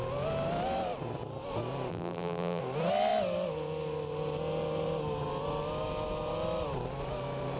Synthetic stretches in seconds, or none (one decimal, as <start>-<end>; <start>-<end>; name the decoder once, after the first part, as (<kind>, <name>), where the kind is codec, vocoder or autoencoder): 1.9-2.6 (vocoder, BigVGAN v2)